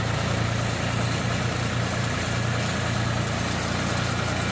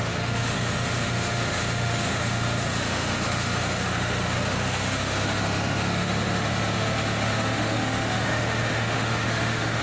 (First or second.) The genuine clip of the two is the first